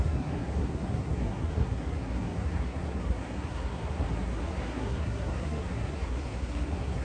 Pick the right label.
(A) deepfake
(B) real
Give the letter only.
A